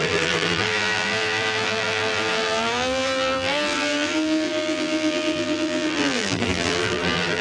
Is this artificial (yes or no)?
yes